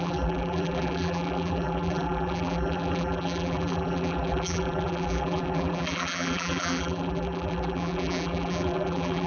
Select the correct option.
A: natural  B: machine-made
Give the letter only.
B